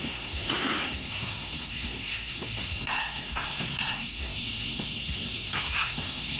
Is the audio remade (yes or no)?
yes